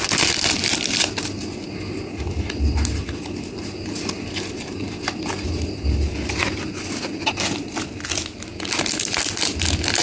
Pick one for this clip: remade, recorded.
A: recorded